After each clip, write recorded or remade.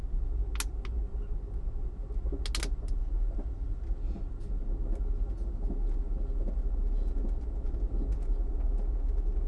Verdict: recorded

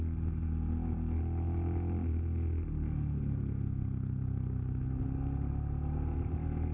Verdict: recorded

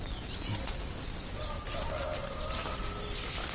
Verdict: recorded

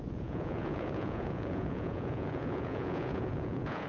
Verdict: remade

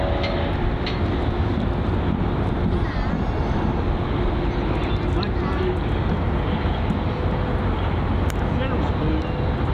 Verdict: recorded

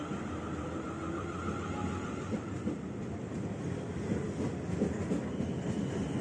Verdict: recorded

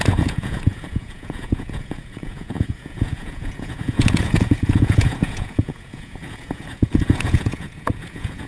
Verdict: remade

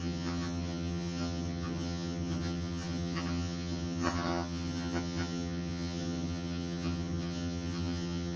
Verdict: remade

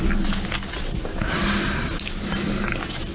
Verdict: recorded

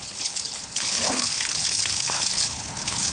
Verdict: remade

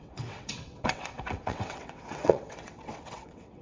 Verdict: remade